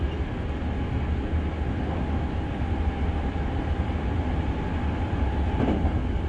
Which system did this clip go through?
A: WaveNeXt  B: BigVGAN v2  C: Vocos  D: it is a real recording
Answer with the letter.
D